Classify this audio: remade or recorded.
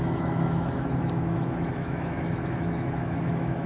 remade